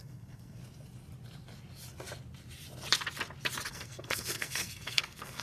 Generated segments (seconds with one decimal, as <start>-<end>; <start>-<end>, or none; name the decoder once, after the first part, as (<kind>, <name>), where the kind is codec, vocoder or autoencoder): 0.0-0.6 (codec, SNAC); 3.7-5.4